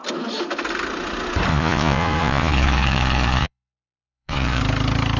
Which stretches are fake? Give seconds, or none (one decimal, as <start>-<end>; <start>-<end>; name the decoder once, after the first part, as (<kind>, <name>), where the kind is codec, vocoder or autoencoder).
1.5-4.6 (vocoder, Vocos)